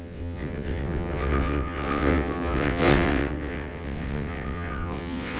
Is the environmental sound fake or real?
fake